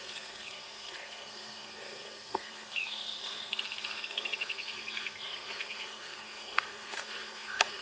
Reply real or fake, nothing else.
fake